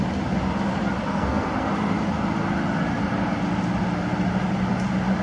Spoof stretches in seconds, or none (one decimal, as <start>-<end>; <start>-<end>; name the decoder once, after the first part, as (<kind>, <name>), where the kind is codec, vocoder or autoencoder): 1.0-1.7 (codec, SNAC)